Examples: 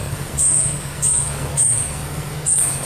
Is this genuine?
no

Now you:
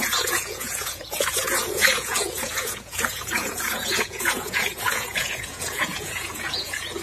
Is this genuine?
no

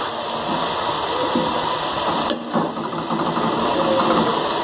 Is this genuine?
yes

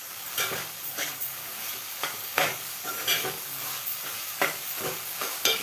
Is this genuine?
no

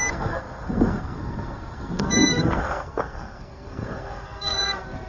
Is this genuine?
no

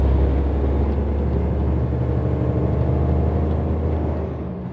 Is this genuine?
yes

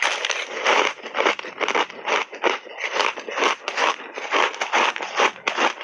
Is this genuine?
yes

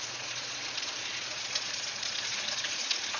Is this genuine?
no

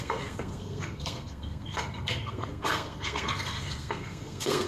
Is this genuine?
no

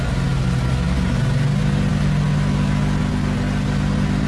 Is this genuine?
yes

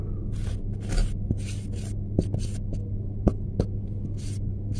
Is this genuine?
yes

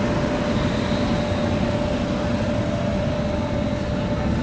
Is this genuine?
yes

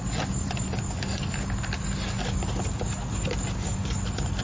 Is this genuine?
yes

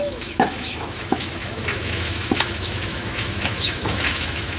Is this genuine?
no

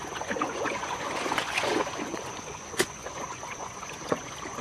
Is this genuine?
no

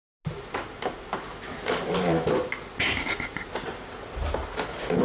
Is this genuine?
yes